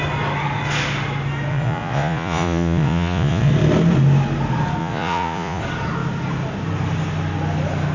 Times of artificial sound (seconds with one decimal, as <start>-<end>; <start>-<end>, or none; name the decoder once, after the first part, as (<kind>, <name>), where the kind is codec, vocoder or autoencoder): 1.5-3.5 (vocoder, Vocos); 4.8-5.6